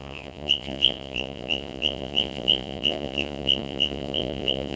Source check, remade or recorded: remade